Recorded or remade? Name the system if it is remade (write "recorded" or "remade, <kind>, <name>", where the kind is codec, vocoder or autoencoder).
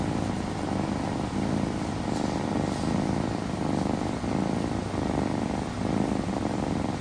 recorded